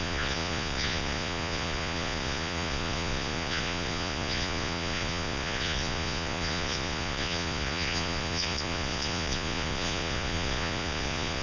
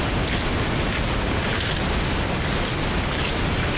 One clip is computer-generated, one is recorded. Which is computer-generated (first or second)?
first